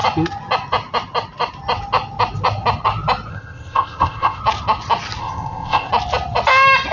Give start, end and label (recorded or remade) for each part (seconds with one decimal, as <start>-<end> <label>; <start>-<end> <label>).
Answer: 0.0-3.3 recorded; 3.3-4.4 remade; 4.4-5.2 recorded; 5.2-5.9 remade; 5.9-6.9 recorded

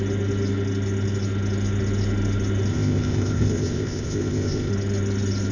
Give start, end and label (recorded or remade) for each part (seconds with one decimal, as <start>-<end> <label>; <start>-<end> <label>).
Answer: 0.0-2.7 recorded; 2.7-4.7 remade; 4.7-5.5 recorded

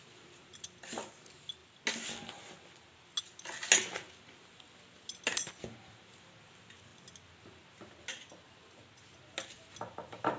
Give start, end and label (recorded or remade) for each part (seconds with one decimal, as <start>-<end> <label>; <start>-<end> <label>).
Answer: 0.0-10.4 recorded

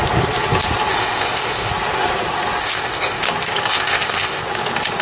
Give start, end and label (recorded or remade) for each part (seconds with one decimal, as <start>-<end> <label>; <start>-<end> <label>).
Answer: 0.0-0.9 recorded; 0.9-1.7 remade; 1.7-2.6 recorded; 2.6-3.2 remade; 3.2-3.7 recorded; 3.7-4.4 remade; 4.4-5.0 recorded

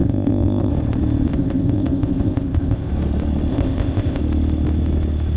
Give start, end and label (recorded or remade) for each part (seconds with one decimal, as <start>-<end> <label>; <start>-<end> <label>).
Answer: 0.0-0.7 remade; 0.7-1.3 recorded; 1.3-2.9 remade; 2.9-3.5 recorded; 3.5-4.2 remade; 4.2-5.4 recorded

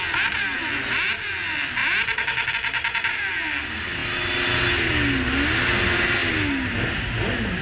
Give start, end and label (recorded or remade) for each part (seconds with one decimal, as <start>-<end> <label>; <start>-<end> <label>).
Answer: 0.0-7.6 recorded

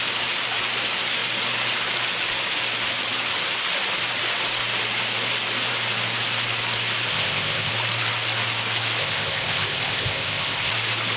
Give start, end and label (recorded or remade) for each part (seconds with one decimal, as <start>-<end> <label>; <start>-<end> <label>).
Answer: 0.0-7.1 recorded; 7.1-7.7 remade; 7.7-9.0 recorded; 9.0-10.7 remade; 10.7-11.2 recorded